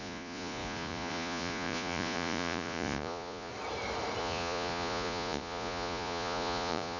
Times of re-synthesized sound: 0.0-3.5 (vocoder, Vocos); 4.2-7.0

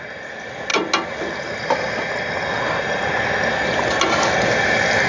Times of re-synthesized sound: none